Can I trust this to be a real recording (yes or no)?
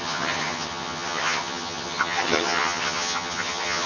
no